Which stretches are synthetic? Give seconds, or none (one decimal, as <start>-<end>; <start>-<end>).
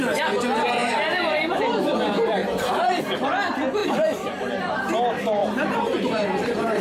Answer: 0.8-2.0; 2.4-3.0; 5.4-6.8